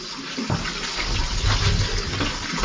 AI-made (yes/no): no